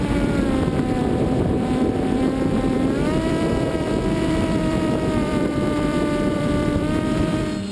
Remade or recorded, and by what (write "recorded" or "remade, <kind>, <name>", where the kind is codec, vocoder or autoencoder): remade, vocoder, BigVGAN v2